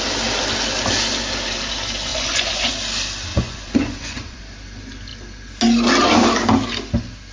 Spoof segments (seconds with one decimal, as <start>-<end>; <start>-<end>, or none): 2.1-2.7; 3.3-4.4